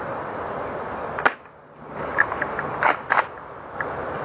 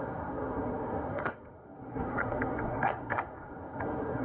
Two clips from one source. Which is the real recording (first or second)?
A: first